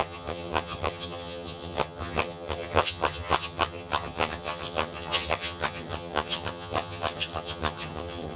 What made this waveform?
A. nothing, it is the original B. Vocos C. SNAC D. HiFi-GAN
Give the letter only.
D